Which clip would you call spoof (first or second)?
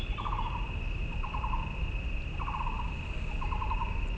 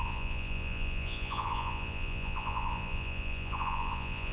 second